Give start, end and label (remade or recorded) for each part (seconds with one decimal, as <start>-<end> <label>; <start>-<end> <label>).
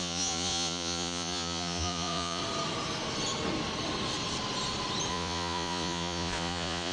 0.0-2.4 remade; 2.4-5.1 recorded; 5.1-6.9 remade